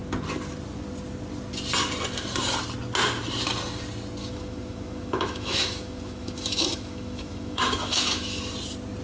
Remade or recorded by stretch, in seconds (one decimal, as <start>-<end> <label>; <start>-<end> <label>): 0.0-4.2 recorded; 4.2-8.4 remade; 8.4-9.0 recorded